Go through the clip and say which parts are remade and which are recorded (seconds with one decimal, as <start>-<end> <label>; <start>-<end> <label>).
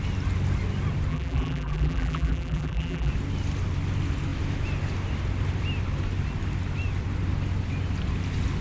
0.0-1.1 recorded; 1.1-3.1 remade; 3.1-8.6 recorded